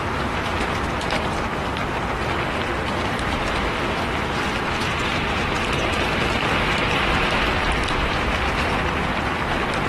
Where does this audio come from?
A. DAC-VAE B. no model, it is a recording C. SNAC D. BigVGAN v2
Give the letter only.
D